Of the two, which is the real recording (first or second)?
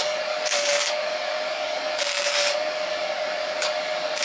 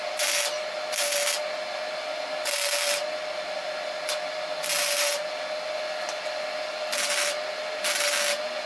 second